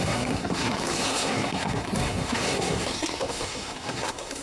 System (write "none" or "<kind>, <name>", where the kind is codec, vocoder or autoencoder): codec, SNAC